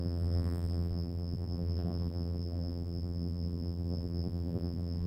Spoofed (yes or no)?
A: yes